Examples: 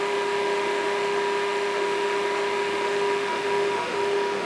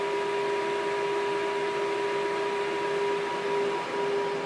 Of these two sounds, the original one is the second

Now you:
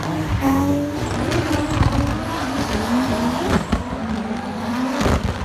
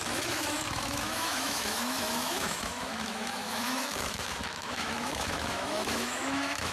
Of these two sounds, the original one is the first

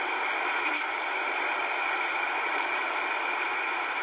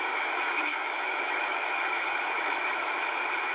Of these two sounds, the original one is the first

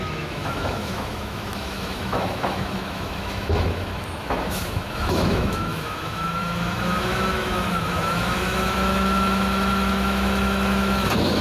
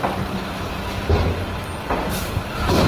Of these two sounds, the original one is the second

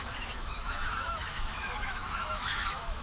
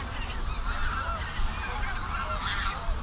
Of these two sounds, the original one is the second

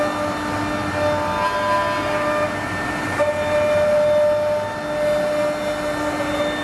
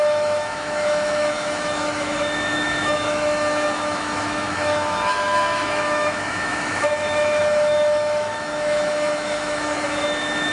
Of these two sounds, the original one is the first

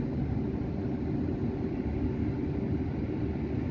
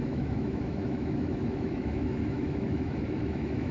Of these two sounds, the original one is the first